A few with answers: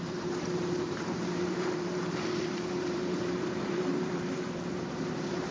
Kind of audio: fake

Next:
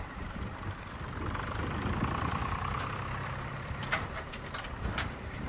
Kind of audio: fake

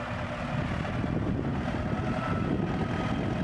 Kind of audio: real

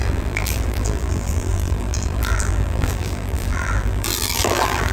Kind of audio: fake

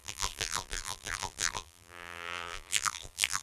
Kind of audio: fake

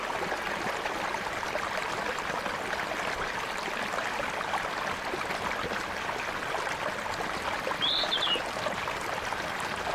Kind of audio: real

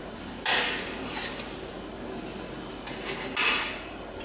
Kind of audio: real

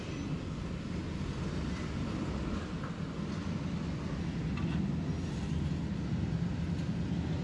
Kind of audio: real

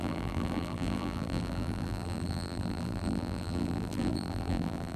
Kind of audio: fake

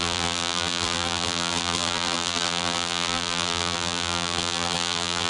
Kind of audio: fake